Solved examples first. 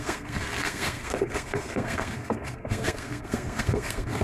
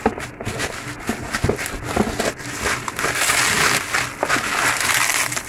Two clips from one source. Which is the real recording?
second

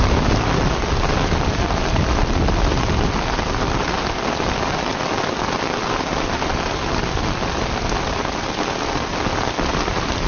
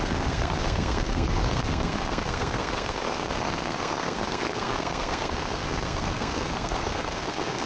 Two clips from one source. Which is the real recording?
first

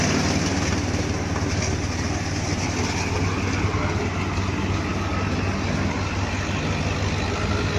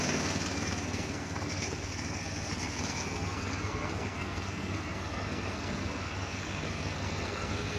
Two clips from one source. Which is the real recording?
first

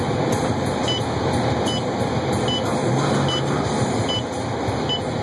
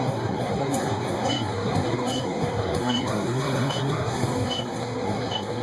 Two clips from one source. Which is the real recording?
first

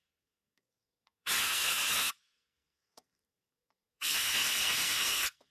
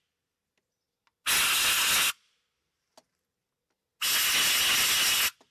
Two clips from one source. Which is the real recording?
second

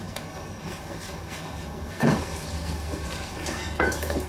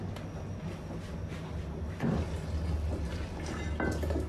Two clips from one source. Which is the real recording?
second